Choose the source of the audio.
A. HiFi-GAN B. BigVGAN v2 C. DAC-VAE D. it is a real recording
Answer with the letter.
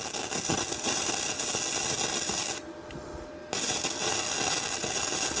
D